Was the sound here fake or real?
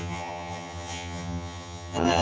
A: fake